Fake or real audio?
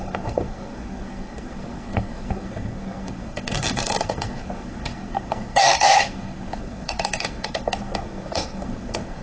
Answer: fake